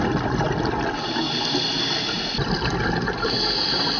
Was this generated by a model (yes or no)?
no